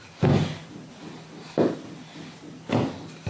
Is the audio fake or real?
real